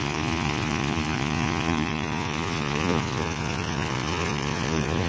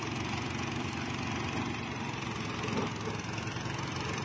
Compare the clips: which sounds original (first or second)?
second